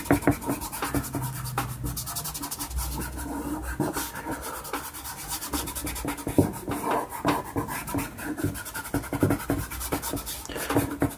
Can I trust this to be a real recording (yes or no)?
yes